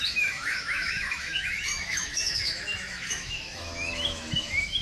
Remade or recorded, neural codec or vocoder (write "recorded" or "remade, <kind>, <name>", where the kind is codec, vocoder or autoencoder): remade, autoencoder, DAC-VAE